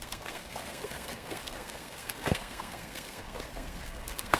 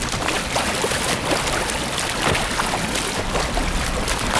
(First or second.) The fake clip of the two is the first